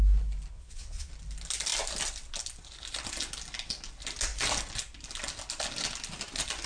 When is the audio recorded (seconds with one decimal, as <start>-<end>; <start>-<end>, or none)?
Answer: 0.0-0.5; 1.1-6.7